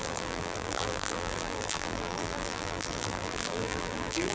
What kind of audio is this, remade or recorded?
remade